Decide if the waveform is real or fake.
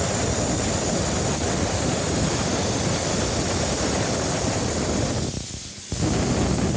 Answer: real